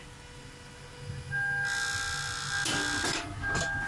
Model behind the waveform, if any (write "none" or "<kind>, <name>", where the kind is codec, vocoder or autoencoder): none